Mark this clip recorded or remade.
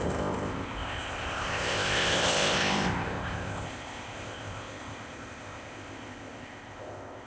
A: remade